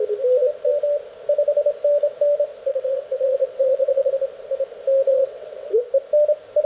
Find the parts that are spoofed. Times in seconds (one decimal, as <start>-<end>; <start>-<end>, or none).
2.5-4.1; 5.1-5.8